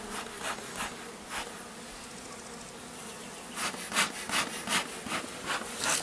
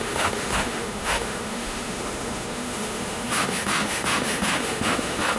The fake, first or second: second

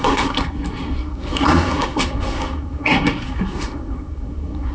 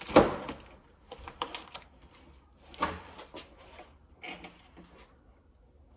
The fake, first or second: first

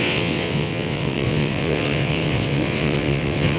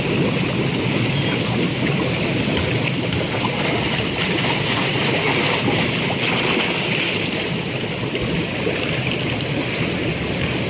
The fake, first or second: first